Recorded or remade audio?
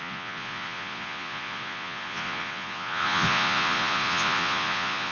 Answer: remade